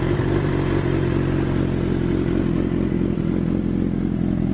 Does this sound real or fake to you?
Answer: real